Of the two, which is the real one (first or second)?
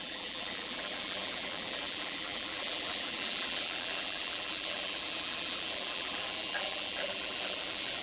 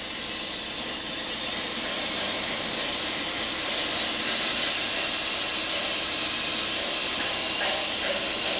second